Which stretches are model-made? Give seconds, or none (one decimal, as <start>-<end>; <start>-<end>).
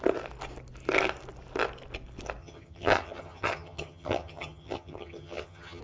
2.4-5.8